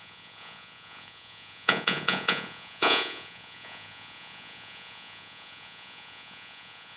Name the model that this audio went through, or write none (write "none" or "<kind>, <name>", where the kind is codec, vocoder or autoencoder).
vocoder, Vocos